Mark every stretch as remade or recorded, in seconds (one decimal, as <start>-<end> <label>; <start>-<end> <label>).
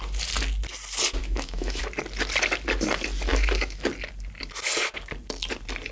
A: 0.0-1.2 recorded; 1.2-1.8 remade; 1.8-3.3 recorded; 3.3-3.9 remade; 3.9-5.9 recorded